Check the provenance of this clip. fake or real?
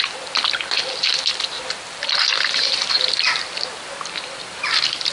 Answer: real